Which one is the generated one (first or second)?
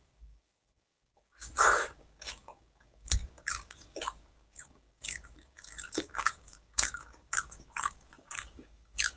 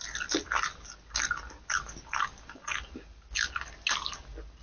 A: first